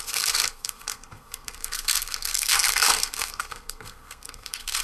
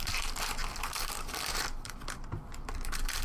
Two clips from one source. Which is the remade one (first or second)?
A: first